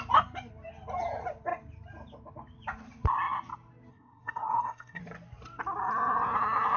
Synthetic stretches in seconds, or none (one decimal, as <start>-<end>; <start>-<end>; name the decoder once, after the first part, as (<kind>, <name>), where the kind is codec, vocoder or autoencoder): 3.9-5.0 (codec, SNAC)